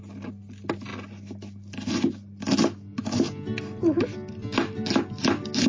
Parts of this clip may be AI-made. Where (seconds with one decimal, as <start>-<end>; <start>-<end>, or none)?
none